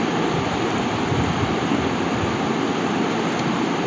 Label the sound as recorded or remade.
recorded